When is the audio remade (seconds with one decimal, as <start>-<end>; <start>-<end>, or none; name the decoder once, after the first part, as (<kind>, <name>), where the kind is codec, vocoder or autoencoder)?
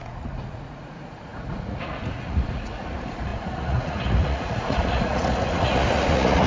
0.0-6.5 (vocoder, Vocos)